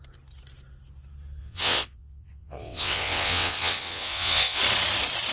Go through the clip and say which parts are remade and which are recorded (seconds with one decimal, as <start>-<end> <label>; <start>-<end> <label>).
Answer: 0.0-1.4 recorded; 1.4-4.6 remade; 4.6-5.3 recorded